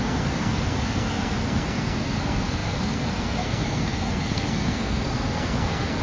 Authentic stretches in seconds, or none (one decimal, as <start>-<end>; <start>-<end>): none